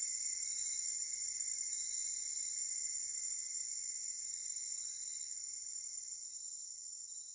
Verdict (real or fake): fake